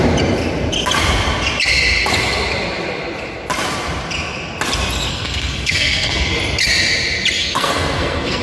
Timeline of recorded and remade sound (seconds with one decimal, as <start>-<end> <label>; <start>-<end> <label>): 0.0-5.1 recorded; 5.1-6.3 remade; 6.3-7.4 recorded; 7.4-8.4 remade